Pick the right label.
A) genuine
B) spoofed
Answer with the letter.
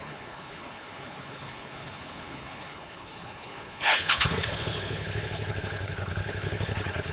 B